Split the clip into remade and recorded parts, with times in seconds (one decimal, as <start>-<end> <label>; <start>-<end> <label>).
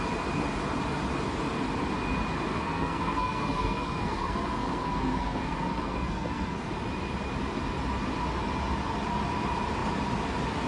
0.0-2.5 recorded; 2.5-6.7 remade; 6.7-10.7 recorded